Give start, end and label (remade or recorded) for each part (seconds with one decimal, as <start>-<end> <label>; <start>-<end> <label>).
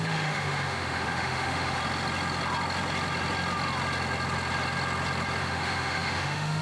0.0-1.8 remade; 1.8-5.4 recorded; 5.4-6.6 remade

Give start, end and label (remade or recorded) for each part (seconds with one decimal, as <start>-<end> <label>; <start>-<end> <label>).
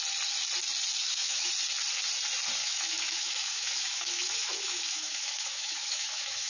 0.0-1.0 recorded; 1.0-1.5 remade; 1.5-2.6 recorded; 2.6-6.5 remade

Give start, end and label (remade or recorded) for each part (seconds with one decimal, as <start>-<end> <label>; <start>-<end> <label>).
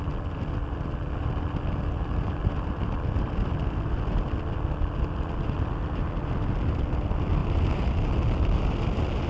0.0-9.3 recorded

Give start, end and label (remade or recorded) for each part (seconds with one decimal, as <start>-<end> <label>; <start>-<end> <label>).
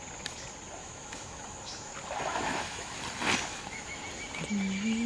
0.0-0.8 recorded; 0.8-1.9 remade; 1.9-2.3 recorded; 2.3-3.0 remade; 3.0-3.5 recorded; 3.5-4.0 remade; 4.0-5.1 recorded